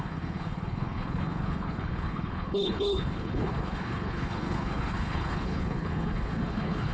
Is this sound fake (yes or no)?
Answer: yes